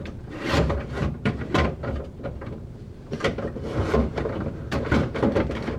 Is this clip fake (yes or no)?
yes